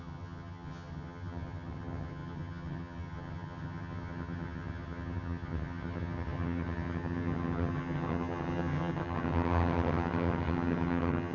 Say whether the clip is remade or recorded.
remade